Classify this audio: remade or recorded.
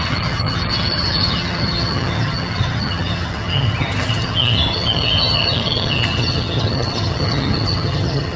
remade